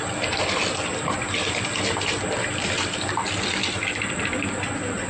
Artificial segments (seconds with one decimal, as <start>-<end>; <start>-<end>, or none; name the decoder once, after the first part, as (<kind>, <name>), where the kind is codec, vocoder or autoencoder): none